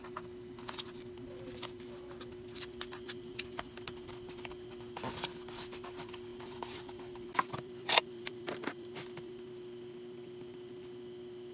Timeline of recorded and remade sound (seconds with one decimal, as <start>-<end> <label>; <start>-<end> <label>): 0.0-6.3 recorded; 6.3-9.3 remade; 9.3-11.5 recorded